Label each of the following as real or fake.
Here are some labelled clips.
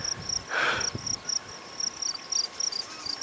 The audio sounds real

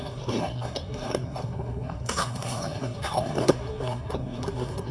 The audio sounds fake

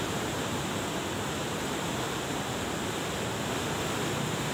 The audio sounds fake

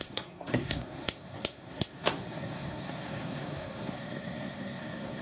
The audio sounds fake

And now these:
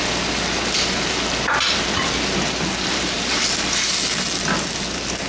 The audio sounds real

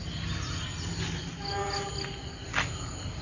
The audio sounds real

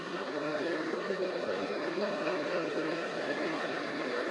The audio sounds fake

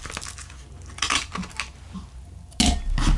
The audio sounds real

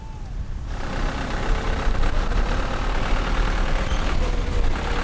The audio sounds real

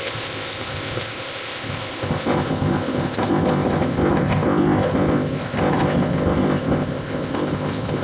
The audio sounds fake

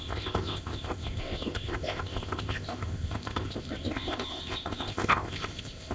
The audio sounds fake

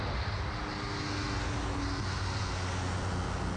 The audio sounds real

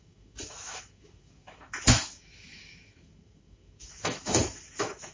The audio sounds fake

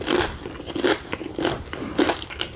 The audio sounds real